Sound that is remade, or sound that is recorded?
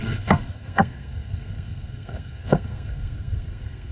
remade